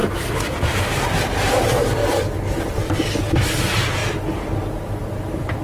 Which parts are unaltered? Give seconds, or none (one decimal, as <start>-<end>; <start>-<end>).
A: 2.0-3.2; 4.0-4.7